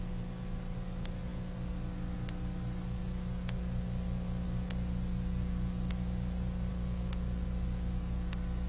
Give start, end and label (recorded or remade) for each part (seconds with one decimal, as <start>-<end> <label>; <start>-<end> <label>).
0.0-8.7 recorded